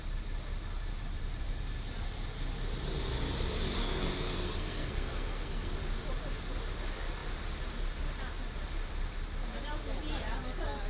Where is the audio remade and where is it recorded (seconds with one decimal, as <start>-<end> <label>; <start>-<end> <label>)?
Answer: 0.0-3.8 recorded; 3.8-5.7 remade; 5.7-10.9 recorded